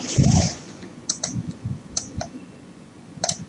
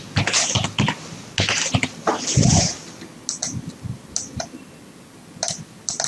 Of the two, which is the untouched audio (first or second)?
second